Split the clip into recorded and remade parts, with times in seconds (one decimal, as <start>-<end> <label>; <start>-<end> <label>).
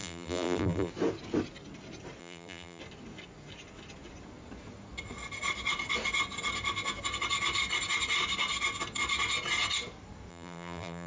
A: 0.0-0.9 remade; 0.9-2.2 recorded; 2.2-2.8 remade; 2.8-10.3 recorded; 10.3-11.1 remade